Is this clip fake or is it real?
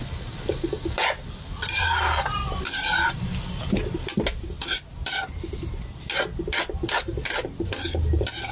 fake